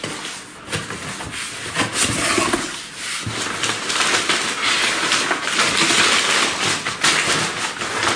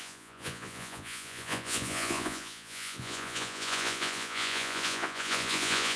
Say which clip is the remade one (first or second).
second